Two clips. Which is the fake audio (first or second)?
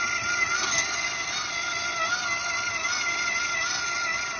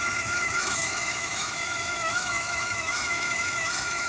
second